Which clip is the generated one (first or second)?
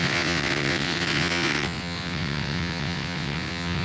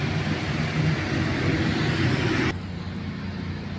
first